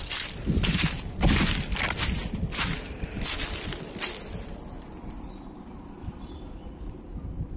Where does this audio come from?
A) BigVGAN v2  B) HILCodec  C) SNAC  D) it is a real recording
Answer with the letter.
D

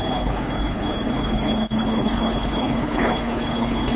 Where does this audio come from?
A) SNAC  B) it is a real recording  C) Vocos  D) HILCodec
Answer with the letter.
D